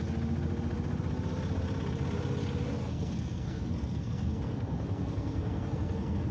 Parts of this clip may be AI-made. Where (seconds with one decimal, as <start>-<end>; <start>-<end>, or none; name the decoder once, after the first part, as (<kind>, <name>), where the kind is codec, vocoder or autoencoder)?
2.8-6.3 (codec, SNAC)